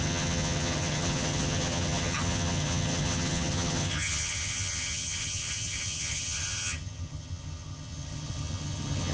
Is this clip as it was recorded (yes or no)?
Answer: no